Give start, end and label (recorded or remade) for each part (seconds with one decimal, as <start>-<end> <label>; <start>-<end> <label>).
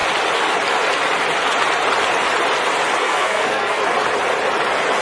0.0-3.0 recorded; 3.0-3.8 remade; 3.8-5.0 recorded